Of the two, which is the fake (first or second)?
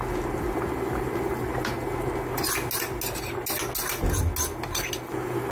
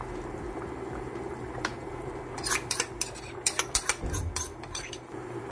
second